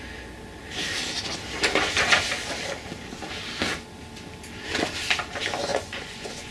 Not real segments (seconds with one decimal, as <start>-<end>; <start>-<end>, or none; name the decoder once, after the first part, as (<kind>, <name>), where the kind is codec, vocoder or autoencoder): 5.7-6.5 (vocoder, Vocos)

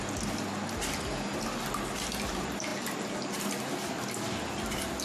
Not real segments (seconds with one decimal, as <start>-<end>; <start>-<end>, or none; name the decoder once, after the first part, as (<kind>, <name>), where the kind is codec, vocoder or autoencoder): none